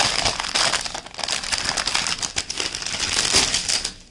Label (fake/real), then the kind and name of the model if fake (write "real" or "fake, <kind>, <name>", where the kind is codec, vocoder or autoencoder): real